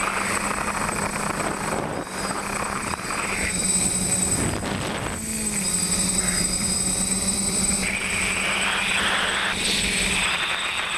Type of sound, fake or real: fake